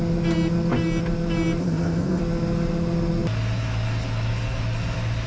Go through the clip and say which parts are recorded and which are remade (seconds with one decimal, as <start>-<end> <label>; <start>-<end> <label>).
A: 0.0-1.6 recorded; 1.6-2.2 remade; 2.2-5.3 recorded

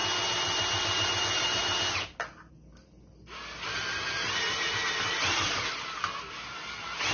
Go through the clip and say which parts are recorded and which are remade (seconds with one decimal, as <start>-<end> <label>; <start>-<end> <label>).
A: 0.0-7.1 recorded

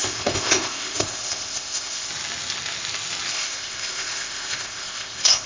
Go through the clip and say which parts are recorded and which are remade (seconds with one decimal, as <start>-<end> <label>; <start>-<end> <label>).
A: 0.0-2.1 remade; 2.1-3.3 recorded; 3.3-5.5 remade

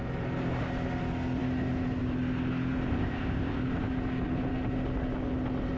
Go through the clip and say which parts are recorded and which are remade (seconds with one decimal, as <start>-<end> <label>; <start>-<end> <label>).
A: 0.0-2.9 recorded; 2.9-3.6 remade; 3.6-5.8 recorded

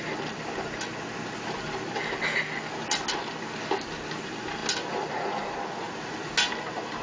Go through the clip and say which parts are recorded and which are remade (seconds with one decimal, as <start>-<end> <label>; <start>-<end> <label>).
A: 0.0-7.0 recorded

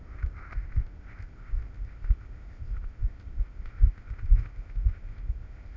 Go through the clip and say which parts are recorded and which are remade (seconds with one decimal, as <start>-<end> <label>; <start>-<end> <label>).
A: 0.0-5.8 remade